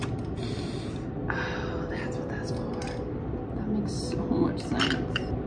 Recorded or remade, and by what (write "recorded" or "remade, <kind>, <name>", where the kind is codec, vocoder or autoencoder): recorded